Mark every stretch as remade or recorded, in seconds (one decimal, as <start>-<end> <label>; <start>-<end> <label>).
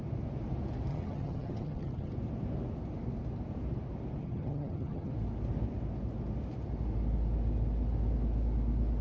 0.0-0.9 recorded; 0.9-2.1 remade; 2.1-4.2 recorded; 4.2-5.1 remade; 5.1-9.0 recorded